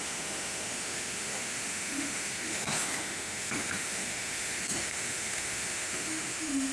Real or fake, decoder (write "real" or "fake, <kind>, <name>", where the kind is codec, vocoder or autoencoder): fake, autoencoder, DAC-VAE